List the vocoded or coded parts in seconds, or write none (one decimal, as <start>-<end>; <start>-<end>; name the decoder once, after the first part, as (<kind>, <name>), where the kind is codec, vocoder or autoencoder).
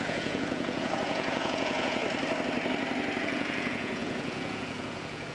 0.0-2.0 (vocoder, Vocos); 3.2-5.3